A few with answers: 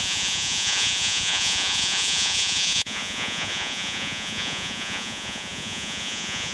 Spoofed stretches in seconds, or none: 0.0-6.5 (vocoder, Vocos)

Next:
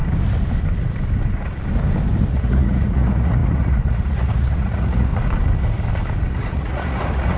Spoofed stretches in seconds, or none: 2.3-5.1 (vocoder, Vocos); 6.3-7.4

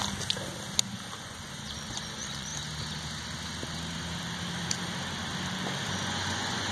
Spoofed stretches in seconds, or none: 1.2-2.5 (vocoder, Vocos); 5.9-6.7